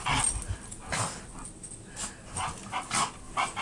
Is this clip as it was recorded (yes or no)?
yes